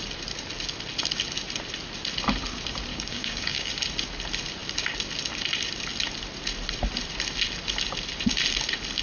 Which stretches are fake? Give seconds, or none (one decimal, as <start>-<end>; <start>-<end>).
2.9-3.7